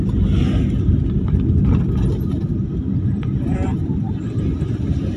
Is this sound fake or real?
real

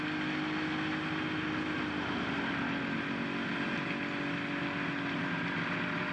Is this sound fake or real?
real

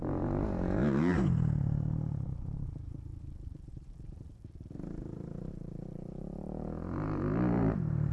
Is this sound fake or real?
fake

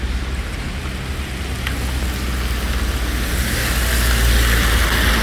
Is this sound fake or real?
real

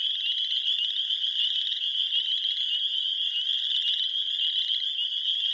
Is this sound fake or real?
real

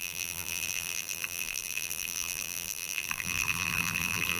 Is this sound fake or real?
fake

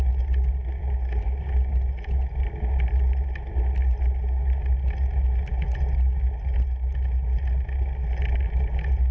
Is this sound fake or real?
real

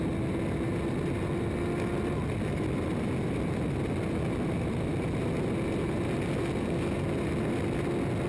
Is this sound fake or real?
real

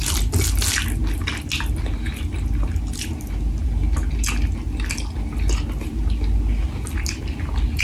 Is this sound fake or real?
real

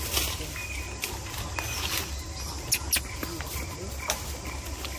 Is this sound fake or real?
real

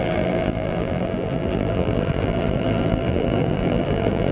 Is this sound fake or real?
fake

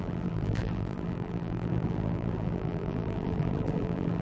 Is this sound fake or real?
fake